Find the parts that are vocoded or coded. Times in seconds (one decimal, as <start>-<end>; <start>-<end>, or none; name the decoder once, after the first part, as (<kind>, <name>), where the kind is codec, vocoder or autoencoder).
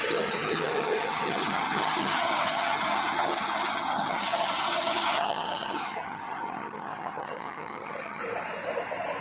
0.0-8.2 (vocoder, HiFi-GAN)